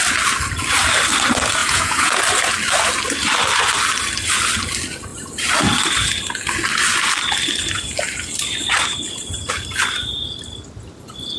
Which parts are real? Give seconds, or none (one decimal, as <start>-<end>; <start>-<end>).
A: 0.0-1.6; 2.2-11.4